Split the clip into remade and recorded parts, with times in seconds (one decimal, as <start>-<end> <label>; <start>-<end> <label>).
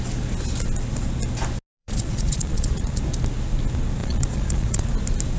0.0-1.8 recorded; 1.8-3.0 remade; 3.0-4.0 recorded; 4.0-4.9 remade; 4.9-5.4 recorded